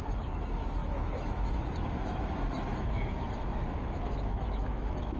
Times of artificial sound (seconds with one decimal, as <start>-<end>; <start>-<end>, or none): 0.0-5.2